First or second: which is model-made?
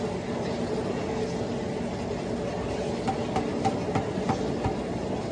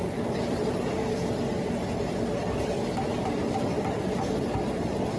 second